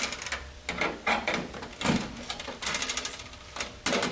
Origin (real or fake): real